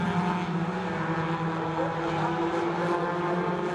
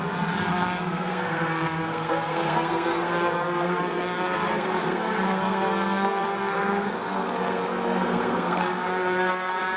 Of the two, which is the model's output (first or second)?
second